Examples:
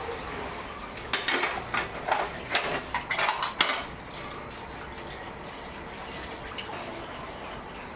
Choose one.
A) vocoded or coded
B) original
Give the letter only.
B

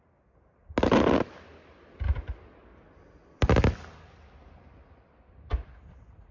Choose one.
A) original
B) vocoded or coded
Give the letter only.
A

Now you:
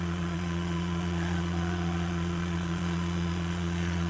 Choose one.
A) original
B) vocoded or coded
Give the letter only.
B